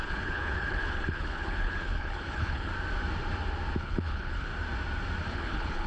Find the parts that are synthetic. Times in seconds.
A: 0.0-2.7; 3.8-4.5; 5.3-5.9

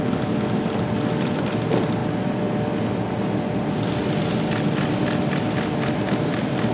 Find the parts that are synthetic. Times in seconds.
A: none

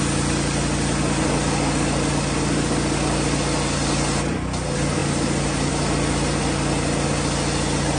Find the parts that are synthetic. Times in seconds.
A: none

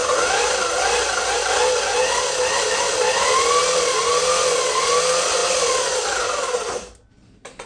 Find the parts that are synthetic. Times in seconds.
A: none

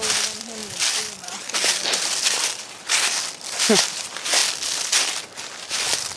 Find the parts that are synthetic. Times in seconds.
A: none

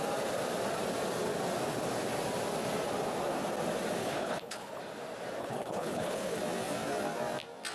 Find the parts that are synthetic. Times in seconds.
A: 4.0-4.8; 5.4-6.4

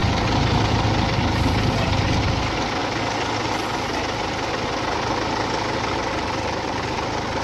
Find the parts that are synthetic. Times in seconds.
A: none

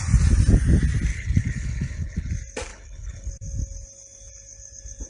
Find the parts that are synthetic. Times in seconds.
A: 1.1-2.3; 2.7-3.3